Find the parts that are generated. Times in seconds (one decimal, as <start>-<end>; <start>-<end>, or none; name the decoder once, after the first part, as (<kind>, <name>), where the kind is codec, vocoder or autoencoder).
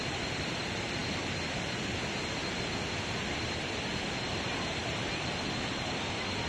none